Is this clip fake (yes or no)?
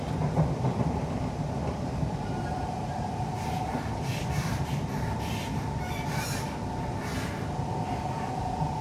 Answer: no